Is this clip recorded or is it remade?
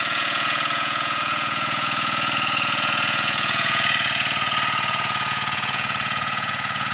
remade